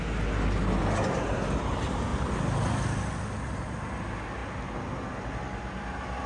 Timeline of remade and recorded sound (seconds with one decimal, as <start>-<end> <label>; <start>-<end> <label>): 0.0-6.3 recorded